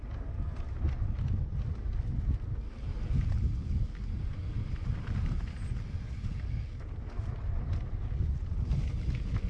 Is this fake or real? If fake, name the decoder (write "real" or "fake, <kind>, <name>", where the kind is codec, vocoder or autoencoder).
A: real